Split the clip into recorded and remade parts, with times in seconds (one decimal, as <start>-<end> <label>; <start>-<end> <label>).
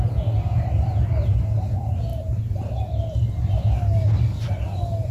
0.0-5.1 recorded